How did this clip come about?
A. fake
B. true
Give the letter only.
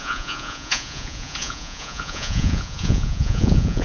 A